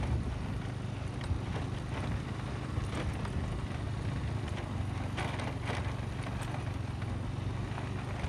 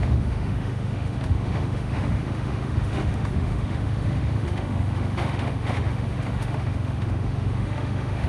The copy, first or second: second